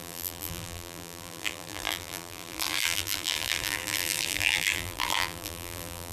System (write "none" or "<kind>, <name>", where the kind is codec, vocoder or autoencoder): vocoder, BigVGAN v2